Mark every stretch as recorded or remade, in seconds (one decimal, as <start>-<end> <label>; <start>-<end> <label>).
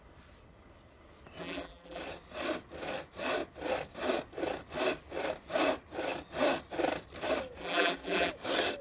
0.0-1.4 recorded; 1.4-2.0 remade; 2.0-7.6 recorded; 7.6-8.3 remade; 8.3-8.8 recorded